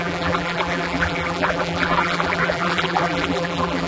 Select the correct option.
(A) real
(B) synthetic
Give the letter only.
B